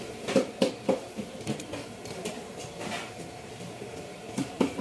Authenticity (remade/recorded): remade